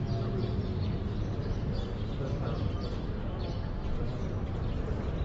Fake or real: real